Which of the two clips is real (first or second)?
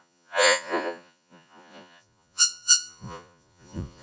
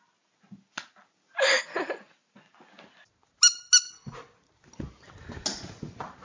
second